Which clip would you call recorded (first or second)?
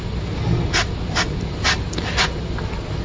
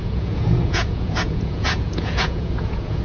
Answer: first